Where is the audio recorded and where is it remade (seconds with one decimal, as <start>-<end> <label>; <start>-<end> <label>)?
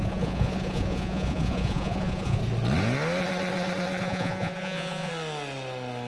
0.0-2.4 remade; 2.4-4.0 recorded; 4.0-5.1 remade; 5.1-6.1 recorded